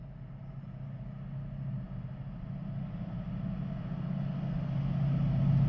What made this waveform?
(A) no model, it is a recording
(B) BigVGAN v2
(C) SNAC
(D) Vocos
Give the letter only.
A